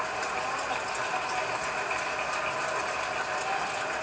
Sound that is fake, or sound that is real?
real